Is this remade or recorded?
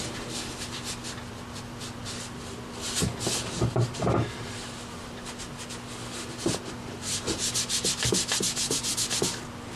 recorded